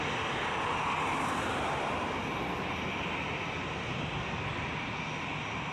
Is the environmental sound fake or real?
real